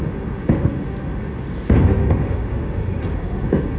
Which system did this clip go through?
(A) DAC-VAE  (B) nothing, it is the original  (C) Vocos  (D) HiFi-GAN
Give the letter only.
A